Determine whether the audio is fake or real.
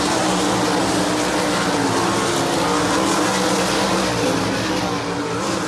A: real